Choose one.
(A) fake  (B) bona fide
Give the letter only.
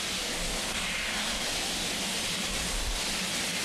B